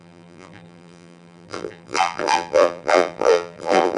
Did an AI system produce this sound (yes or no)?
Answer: yes